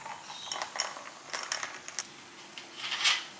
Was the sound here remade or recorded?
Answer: recorded